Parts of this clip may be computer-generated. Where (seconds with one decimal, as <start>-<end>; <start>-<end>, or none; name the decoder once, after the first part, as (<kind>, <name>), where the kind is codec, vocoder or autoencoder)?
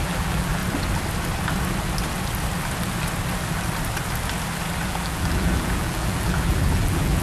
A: 0.0-0.6 (vocoder, BigVGAN v2); 4.9-7.2